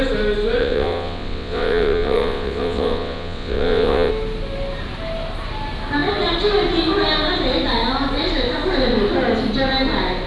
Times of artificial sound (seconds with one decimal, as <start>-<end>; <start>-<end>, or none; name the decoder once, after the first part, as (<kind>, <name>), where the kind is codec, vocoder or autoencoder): 0.6-4.1 (vocoder, WaveNeXt)